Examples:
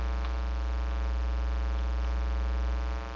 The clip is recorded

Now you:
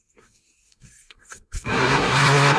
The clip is remade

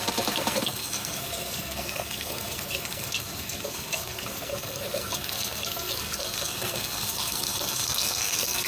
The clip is remade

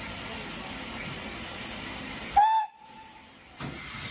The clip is recorded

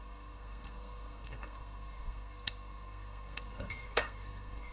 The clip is remade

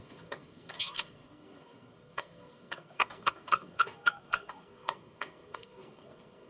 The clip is remade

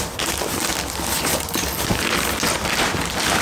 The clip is recorded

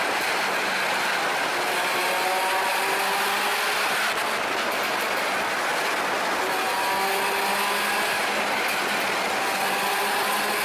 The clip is recorded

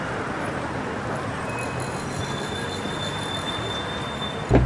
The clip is recorded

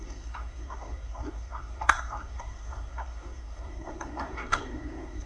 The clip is remade